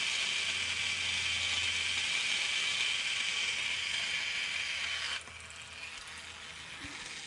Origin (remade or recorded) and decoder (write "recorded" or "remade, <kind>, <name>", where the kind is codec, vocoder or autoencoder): recorded